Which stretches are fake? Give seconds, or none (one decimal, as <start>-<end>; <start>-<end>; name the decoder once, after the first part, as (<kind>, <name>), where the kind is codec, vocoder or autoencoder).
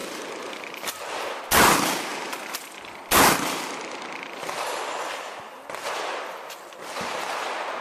0.0-1.4 (vocoder, BigVGAN v2); 2.1-6.8